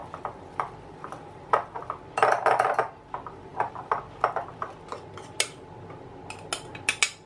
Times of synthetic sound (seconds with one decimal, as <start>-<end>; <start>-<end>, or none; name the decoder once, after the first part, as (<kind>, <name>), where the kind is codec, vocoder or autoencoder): 0.0-1.4 (vocoder, BigVGAN v2)